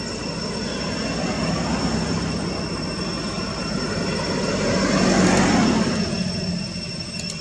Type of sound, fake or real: real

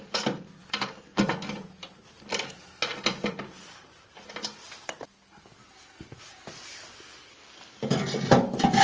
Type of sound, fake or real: fake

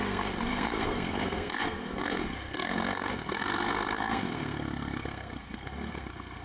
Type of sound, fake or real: fake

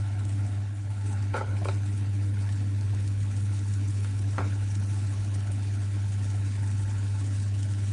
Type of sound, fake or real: fake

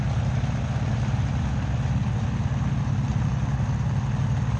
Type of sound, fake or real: real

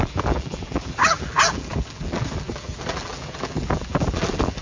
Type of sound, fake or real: fake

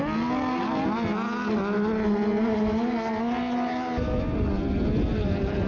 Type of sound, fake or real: real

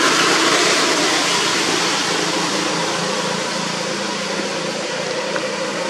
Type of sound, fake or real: real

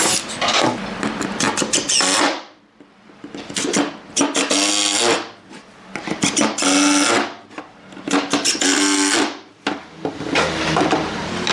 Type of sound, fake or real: real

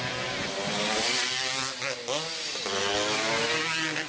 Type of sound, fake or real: real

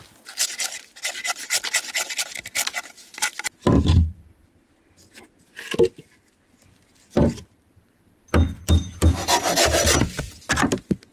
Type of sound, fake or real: real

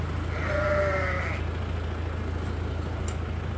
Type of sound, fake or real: real